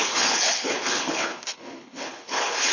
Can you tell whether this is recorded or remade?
remade